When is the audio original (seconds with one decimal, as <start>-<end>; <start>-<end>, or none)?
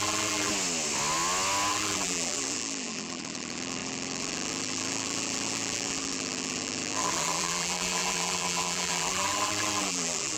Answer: 0.5-1.7